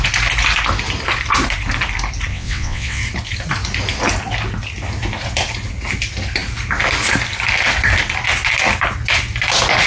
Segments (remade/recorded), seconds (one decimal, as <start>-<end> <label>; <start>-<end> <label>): 0.0-2.3 recorded; 2.3-3.0 remade; 3.0-9.9 recorded